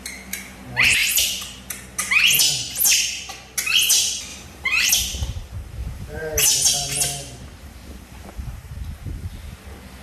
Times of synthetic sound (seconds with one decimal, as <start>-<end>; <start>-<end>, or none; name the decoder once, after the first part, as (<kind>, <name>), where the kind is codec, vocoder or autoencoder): 4.3-4.9 (vocoder, BigVGAN v2); 5.8-6.5; 7.6-8.7